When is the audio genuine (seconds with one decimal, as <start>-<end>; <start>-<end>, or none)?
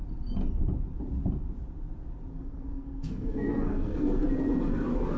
0.0-2.3; 4.2-5.2